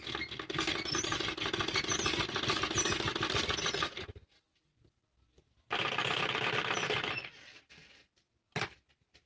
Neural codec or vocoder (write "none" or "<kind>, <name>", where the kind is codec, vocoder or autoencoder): none